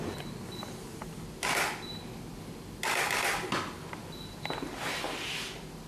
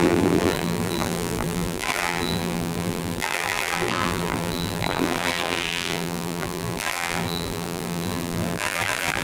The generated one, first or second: second